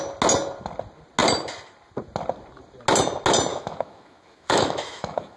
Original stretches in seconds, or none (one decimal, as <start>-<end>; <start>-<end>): 0.0-3.5